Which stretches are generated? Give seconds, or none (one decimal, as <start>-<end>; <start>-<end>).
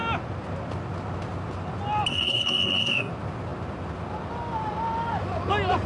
2.1-3.1